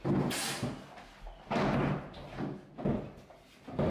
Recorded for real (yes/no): yes